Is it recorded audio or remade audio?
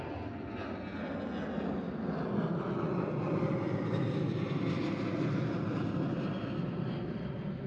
recorded